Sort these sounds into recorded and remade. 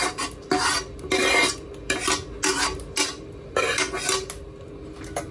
recorded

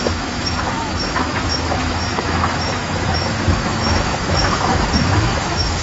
remade